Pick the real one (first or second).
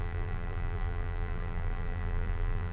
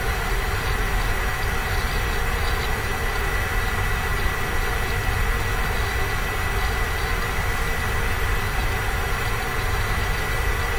second